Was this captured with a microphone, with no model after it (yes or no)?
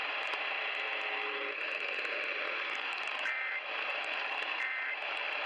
no